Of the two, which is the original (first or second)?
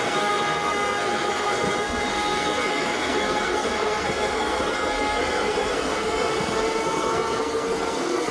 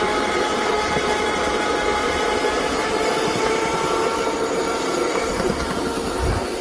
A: second